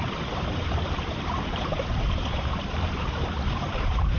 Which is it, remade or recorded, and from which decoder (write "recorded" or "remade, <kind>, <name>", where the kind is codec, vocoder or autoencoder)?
remade, vocoder, BigVGAN v2